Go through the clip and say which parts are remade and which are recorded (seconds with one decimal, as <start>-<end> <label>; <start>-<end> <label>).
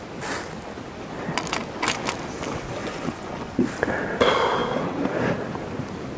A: 0.0-2.8 recorded; 2.8-3.7 remade; 3.7-6.2 recorded